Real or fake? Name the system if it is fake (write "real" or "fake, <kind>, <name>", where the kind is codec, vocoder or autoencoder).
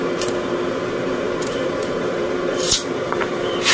fake, vocoder, BigVGAN v2